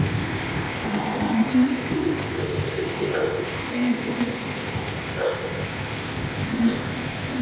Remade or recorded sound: remade